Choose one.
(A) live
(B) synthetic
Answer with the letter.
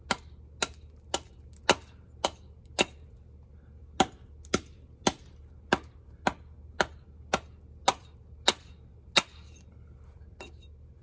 A